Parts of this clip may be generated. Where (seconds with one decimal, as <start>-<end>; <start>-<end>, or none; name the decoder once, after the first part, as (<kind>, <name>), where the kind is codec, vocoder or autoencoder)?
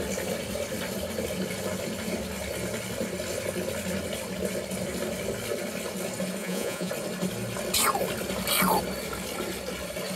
6.4-6.9 (vocoder, Vocos)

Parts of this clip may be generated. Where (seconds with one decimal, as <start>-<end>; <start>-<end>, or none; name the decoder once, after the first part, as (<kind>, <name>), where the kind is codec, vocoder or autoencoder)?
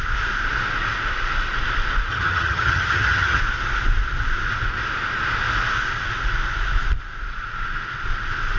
2.1-3.4 (vocoder, HiFi-GAN)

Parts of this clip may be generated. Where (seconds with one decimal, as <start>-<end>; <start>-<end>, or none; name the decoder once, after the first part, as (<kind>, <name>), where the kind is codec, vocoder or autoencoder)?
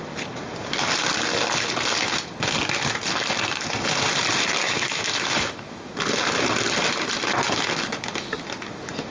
4.6-5.9 (autoencoder, DAC-VAE)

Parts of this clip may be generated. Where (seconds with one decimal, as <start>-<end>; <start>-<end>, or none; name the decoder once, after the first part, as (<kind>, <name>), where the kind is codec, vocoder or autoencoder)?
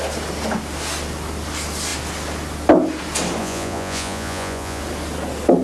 3.4-4.8 (vocoder, Vocos)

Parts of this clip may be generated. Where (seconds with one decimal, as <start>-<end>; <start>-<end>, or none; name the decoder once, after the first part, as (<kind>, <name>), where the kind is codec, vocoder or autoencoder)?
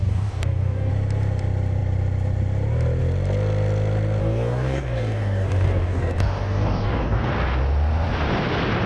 0.0-0.9 (codec, DAC); 4.2-7.3